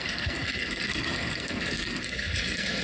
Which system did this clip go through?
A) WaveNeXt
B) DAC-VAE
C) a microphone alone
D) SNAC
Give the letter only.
D